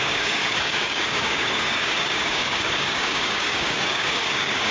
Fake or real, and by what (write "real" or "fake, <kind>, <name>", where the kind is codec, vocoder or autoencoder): fake, codec, DAC